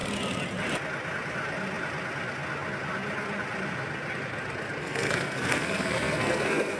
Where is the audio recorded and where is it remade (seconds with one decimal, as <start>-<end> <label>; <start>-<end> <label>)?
0.0-4.8 recorded; 4.8-6.8 remade